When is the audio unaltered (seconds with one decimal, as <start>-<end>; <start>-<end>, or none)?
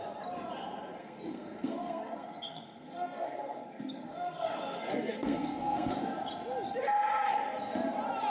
0.0-1.0; 5.9-8.3